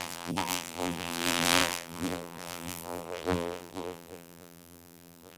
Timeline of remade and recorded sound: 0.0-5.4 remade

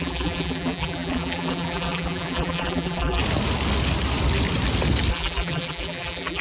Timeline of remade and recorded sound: 0.0-3.2 remade; 3.2-5.1 recorded; 5.1-6.4 remade

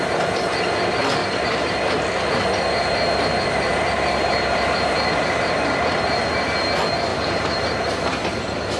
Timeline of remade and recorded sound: 0.0-1.2 recorded; 1.2-1.7 remade; 1.7-3.7 recorded; 3.7-5.8 remade; 5.8-7.1 recorded; 7.1-7.9 remade; 7.9-8.8 recorded

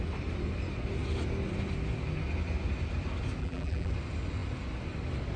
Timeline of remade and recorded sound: 0.0-3.4 recorded; 3.4-3.9 remade; 3.9-5.4 recorded

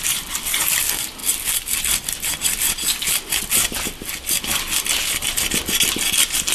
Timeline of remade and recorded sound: 0.0-6.5 recorded

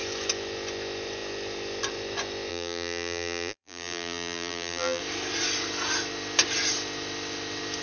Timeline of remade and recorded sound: 0.0-2.5 recorded; 2.5-5.0 remade; 5.0-7.8 recorded

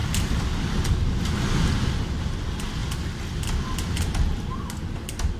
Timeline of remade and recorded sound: 0.0-5.4 recorded

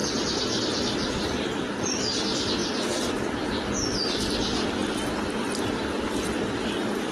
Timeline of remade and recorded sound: 0.0-7.1 recorded